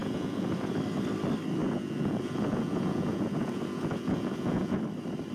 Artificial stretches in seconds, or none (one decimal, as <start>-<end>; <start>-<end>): 0.0-0.7; 1.6-4.8